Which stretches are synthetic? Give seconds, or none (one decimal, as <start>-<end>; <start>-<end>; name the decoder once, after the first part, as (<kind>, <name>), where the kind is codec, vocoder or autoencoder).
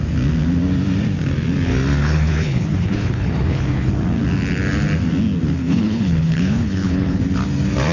2.0-3.9 (codec, HILCodec); 5.6-7.2